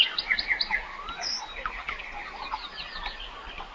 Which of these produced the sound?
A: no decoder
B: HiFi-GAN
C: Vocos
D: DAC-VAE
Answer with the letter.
A